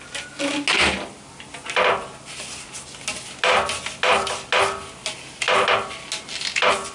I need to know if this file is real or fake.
real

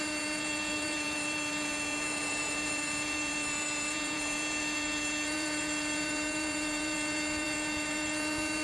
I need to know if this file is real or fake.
fake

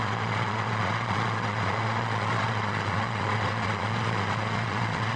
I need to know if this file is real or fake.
fake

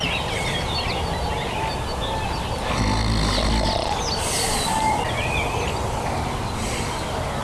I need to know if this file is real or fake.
real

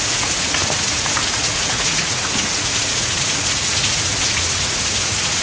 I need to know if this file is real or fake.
fake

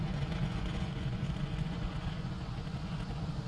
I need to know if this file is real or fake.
fake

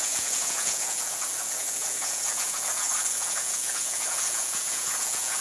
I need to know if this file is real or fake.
fake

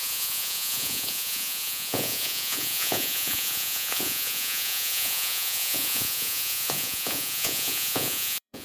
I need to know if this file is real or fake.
fake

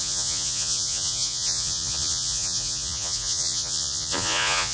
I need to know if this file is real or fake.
fake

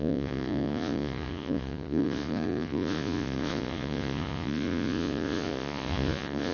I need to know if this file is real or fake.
fake